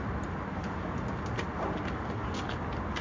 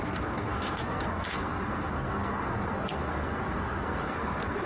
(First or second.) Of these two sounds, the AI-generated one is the second